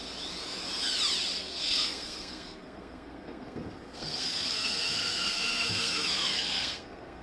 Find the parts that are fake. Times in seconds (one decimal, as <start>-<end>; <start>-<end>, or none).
1.4-7.2